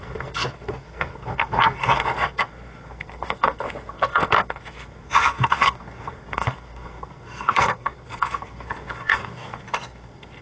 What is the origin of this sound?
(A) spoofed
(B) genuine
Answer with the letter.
A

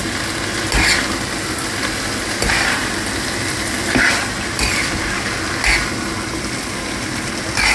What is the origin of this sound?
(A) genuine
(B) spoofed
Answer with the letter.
A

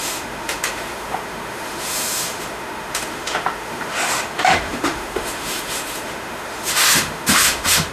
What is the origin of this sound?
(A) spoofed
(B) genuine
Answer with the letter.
A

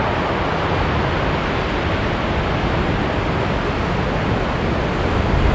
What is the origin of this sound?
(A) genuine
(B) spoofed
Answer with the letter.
A